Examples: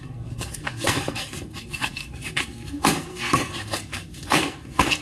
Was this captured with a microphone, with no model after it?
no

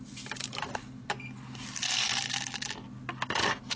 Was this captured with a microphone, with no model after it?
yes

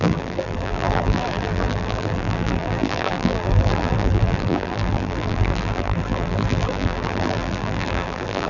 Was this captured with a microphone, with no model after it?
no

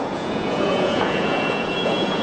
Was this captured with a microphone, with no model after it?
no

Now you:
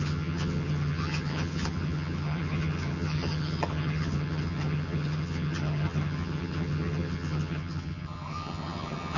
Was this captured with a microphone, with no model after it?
no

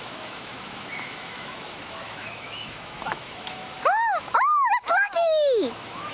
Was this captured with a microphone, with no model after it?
no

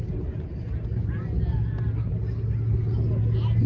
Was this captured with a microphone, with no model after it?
yes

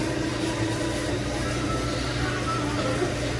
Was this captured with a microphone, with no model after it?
yes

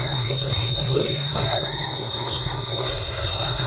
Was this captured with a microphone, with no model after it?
no